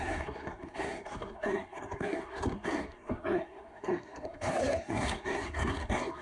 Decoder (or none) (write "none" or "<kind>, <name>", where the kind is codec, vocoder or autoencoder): codec, SNAC